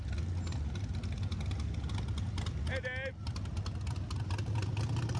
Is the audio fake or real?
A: real